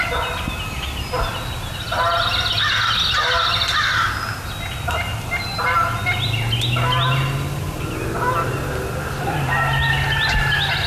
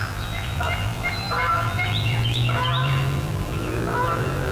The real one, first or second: first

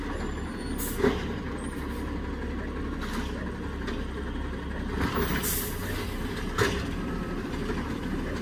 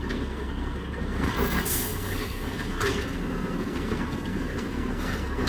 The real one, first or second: first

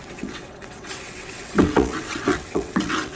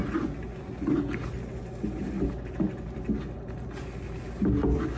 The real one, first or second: second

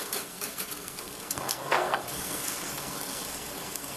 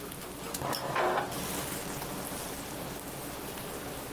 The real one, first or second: second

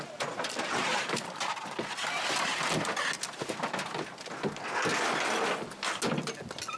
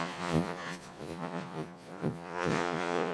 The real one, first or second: first